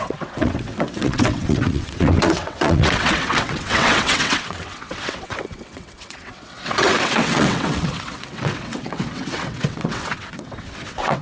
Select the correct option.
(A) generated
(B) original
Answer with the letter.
A